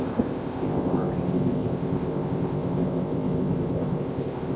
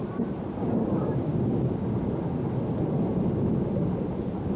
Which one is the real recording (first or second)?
second